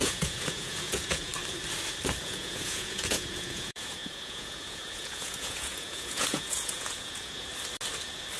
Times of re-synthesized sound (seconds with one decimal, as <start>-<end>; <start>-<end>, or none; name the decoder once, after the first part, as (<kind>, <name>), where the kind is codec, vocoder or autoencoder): 0.0-1.3 (vocoder, Vocos); 2.2-7.5